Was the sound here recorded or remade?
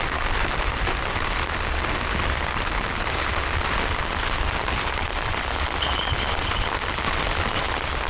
recorded